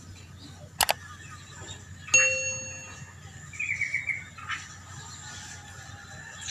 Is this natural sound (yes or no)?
yes